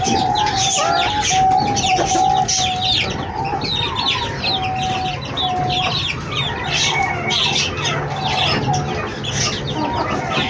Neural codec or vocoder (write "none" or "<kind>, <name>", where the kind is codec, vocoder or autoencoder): none